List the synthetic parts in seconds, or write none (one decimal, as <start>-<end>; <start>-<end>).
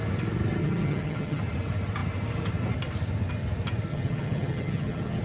0.6-1.4; 3.9-5.2